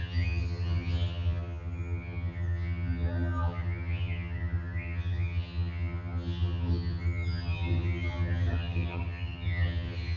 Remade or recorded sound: remade